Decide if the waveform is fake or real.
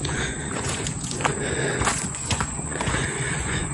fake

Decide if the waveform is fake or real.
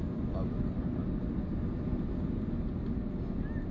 real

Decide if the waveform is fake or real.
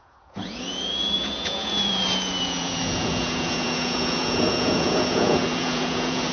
fake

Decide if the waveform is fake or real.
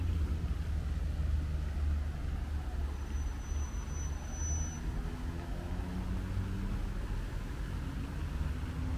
real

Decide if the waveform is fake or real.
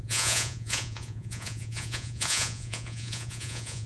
fake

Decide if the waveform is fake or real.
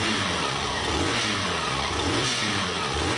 fake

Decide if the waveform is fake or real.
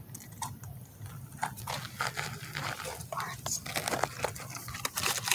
real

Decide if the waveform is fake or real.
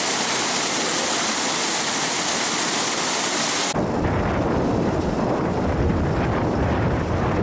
real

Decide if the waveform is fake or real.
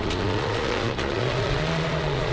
fake